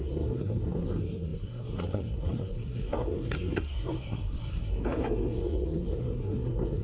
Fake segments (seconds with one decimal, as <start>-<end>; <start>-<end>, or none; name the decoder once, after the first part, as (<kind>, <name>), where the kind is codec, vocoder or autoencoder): 0.0-6.8 (codec, SNAC)